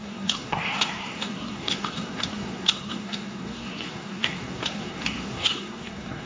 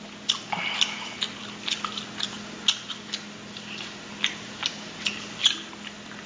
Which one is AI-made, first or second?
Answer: first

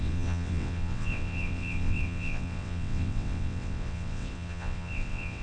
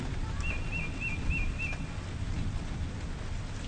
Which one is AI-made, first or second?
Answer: first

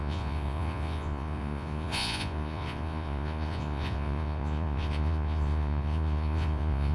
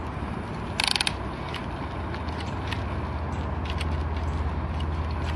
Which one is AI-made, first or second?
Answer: first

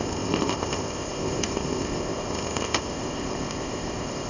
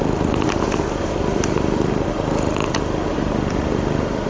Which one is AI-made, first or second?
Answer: first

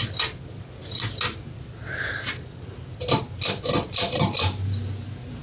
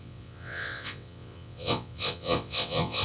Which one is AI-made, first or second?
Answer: second